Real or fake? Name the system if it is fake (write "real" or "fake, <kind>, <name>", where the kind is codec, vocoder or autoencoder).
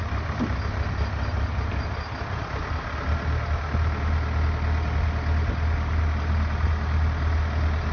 real